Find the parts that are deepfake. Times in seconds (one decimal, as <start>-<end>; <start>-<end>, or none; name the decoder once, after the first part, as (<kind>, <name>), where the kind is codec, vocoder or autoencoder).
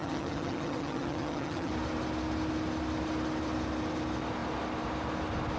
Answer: 0.0-1.7 (vocoder, HiFi-GAN)